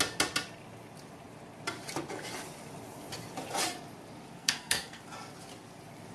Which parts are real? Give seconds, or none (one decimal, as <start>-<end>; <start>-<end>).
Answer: 0.0-4.4; 5.0-6.1